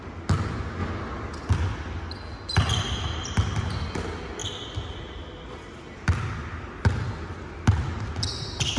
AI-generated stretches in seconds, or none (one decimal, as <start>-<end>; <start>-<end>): 2.5-3.6